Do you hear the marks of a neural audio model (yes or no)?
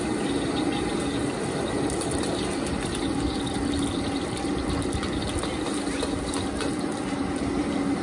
no